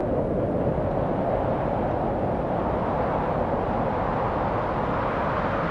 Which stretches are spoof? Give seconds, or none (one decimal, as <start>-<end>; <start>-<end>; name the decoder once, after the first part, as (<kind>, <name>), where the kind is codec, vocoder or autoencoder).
none